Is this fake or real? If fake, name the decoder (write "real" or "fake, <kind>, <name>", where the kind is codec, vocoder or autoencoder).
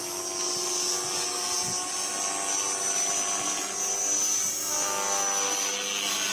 real